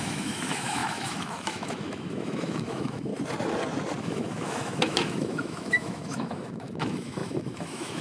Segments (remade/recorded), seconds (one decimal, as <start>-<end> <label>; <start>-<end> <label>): 0.0-3.1 remade; 3.1-4.0 recorded; 4.0-8.0 remade